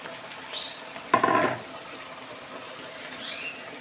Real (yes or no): yes